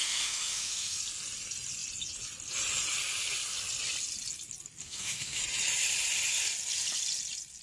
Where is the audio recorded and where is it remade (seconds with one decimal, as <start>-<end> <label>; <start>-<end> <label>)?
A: 0.0-1.0 remade; 1.0-4.8 recorded; 4.8-5.4 remade; 5.4-7.6 recorded